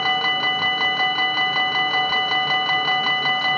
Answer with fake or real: real